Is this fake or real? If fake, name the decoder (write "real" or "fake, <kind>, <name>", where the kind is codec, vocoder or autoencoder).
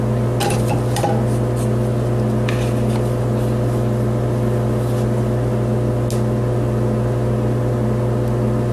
real